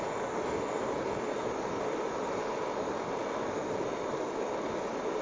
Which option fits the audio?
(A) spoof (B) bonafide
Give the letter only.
B